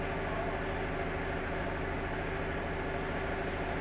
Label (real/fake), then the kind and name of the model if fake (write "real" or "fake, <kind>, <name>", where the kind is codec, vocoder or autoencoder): real